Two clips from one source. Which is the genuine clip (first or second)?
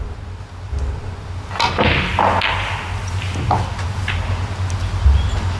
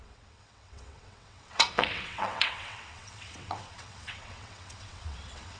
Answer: first